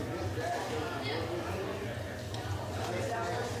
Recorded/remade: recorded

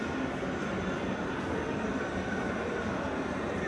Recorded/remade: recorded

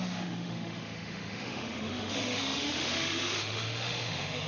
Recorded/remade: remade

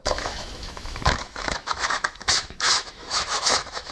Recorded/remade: remade